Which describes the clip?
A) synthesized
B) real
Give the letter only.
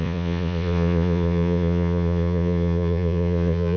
A